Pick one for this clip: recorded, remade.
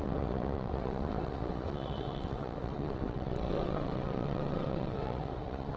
remade